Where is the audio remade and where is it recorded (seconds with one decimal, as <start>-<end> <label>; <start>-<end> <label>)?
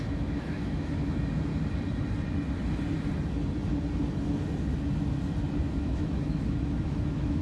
0.0-1.5 remade; 1.5-5.7 recorded; 5.7-7.4 remade